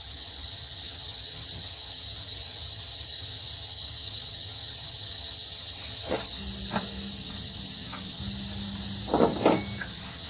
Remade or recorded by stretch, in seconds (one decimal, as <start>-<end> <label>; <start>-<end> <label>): 0.0-6.4 remade; 6.4-7.1 recorded; 7.1-8.2 remade; 8.2-9.8 recorded; 9.8-10.3 remade